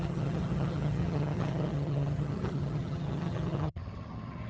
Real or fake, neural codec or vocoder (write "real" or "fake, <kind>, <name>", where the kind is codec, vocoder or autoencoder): fake, vocoder, HiFi-GAN